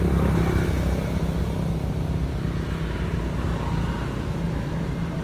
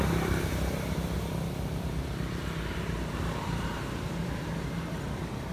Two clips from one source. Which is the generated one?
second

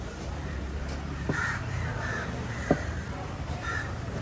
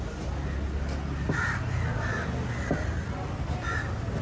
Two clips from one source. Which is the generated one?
first